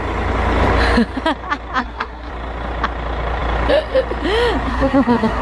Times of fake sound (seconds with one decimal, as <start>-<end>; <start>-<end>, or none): 1.8-2.3; 4.7-5.4